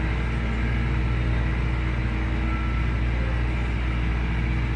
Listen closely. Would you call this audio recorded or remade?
recorded